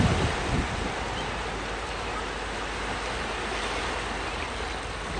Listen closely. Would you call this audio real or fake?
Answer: real